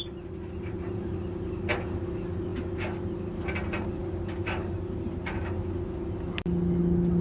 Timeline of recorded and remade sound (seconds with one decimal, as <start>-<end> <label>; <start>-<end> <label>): 0.0-7.2 recorded

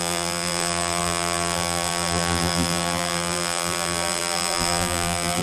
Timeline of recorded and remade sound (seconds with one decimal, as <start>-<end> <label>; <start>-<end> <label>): 0.0-5.4 remade

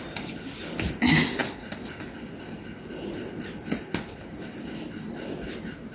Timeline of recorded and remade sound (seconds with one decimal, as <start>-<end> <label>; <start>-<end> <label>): 0.0-5.9 recorded

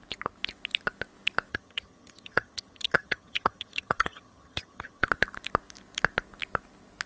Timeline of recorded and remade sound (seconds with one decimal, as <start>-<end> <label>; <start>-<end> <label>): 0.0-1.5 recorded; 1.5-5.1 remade; 5.1-7.1 recorded